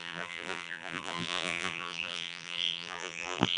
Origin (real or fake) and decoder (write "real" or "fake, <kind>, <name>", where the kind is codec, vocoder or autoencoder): fake, vocoder, BigVGAN v2